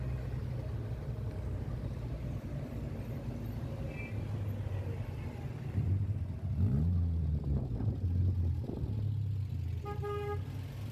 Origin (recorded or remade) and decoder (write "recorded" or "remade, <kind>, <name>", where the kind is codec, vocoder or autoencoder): recorded